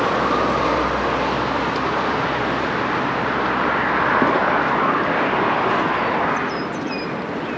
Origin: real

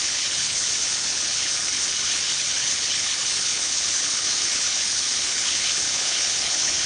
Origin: fake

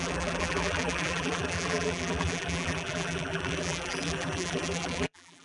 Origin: fake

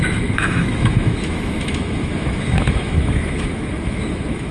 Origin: fake